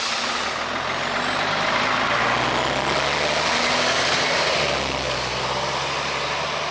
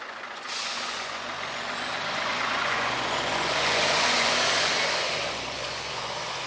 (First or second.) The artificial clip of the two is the second